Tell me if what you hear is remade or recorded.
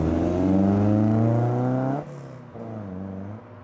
recorded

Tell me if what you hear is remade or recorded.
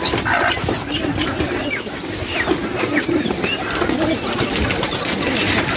recorded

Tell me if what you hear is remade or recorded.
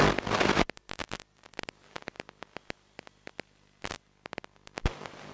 recorded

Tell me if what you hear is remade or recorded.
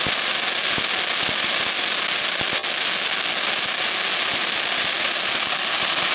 recorded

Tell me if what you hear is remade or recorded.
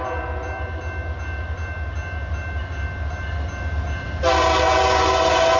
recorded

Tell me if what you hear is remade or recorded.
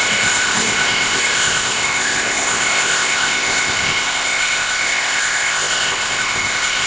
remade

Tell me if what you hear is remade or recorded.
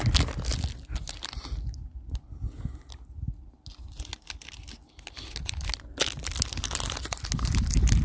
recorded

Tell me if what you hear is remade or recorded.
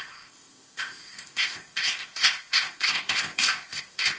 remade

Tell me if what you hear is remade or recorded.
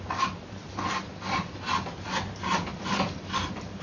recorded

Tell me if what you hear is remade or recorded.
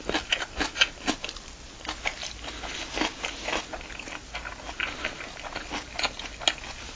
recorded